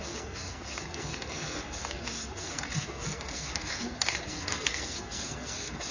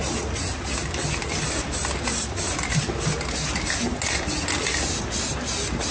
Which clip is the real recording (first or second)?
second